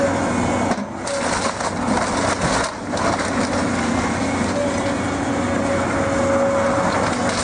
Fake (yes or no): no